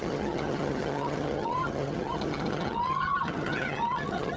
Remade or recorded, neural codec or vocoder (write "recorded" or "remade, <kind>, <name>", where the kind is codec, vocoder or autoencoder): remade, vocoder, HiFi-GAN